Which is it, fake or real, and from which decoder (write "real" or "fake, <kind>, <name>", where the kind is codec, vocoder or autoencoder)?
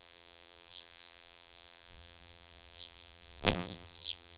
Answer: fake, vocoder, BigVGAN v2